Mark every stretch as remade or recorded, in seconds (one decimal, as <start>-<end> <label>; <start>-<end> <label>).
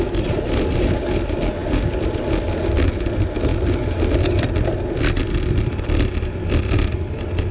0.0-7.5 recorded